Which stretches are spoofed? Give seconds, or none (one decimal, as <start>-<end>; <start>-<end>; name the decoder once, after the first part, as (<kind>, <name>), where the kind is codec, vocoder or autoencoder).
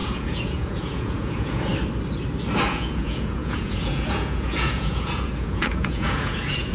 0.0-1.7 (vocoder, Vocos); 2.7-6.7